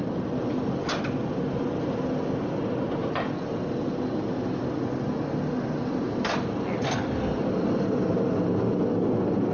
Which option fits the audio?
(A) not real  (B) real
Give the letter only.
B